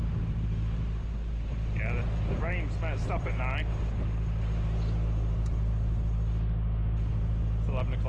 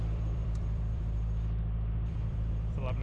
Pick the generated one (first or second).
second